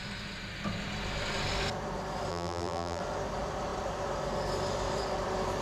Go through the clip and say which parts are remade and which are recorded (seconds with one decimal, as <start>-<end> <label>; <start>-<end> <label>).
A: 0.0-2.3 recorded; 2.3-3.0 remade; 3.0-5.6 recorded